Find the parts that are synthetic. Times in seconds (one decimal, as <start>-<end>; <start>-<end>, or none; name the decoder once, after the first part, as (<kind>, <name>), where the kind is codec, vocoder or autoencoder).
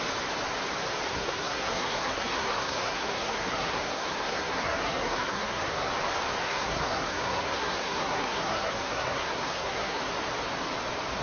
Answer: 1.1-5.9 (codec, SNAC); 6.4-10.0